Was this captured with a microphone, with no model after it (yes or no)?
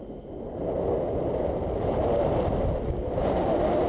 yes